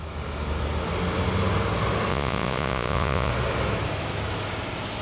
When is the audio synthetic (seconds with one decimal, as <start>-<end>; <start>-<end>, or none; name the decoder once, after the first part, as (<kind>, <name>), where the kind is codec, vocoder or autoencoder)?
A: 2.1-3.3 (vocoder, Vocos)